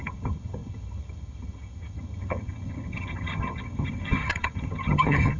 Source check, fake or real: fake